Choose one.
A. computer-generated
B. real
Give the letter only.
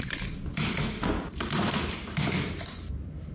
B